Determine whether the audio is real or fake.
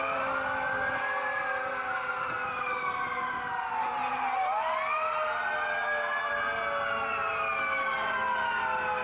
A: real